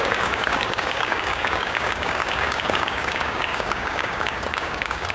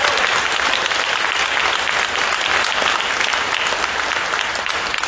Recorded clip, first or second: second